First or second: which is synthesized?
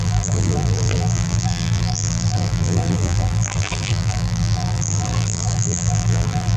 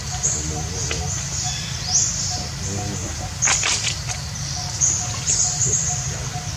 first